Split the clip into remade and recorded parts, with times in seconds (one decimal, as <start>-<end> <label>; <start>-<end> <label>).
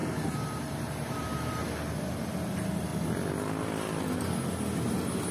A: 0.0-1.6 remade; 1.6-2.1 recorded; 2.1-2.9 remade; 2.9-5.3 recorded